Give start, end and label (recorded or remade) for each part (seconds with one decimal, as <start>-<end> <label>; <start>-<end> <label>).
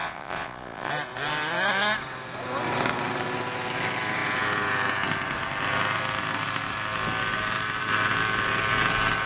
0.0-0.9 remade; 0.9-9.3 recorded